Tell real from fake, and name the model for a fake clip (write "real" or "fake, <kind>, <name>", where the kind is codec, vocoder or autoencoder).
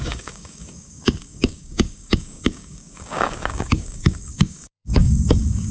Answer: fake, codec, DAC